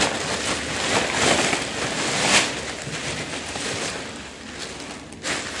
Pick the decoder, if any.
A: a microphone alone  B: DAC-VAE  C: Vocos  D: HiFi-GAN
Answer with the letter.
A